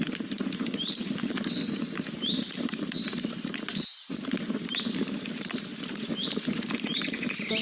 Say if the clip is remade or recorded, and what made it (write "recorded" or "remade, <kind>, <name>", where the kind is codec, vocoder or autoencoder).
remade, vocoder, BigVGAN v2